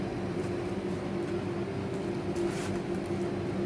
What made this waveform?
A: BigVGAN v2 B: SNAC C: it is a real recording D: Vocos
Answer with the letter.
C